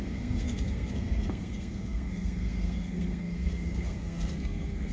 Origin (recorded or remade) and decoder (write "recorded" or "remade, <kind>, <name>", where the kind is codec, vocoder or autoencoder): remade, codec, SNAC